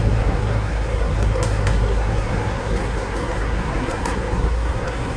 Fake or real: fake